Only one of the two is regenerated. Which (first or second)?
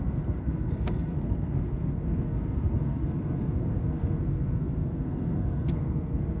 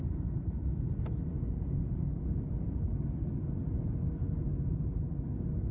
first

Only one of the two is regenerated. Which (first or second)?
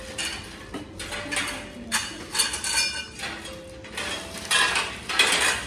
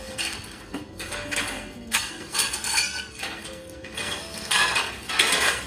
second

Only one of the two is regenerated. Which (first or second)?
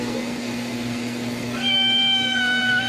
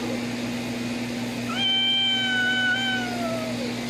first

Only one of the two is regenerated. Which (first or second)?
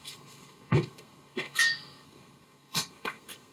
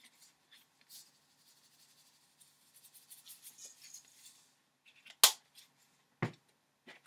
first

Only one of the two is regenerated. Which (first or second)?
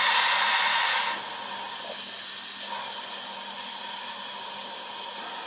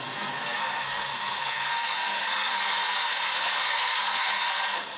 second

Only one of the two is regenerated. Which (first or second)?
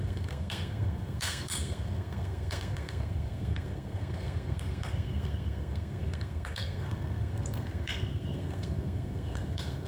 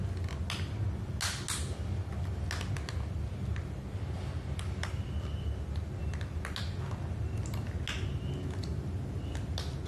first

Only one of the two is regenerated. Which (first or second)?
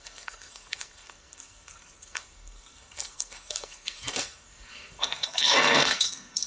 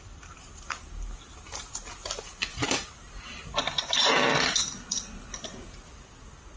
first